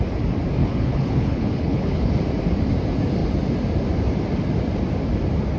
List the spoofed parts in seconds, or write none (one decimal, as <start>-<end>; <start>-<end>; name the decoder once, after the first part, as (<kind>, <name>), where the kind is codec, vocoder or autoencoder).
0.6-2.1 (codec, HILCodec)